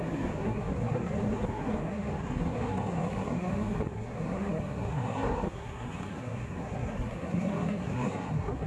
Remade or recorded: remade